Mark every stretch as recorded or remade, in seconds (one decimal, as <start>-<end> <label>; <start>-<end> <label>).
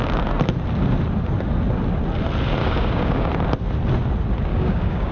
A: 0.0-2.6 recorded; 2.6-3.3 remade; 3.3-4.5 recorded; 4.5-5.1 remade